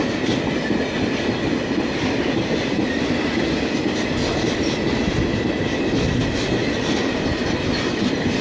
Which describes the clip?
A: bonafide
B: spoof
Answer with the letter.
A